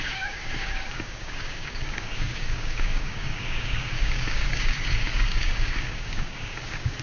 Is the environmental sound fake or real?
fake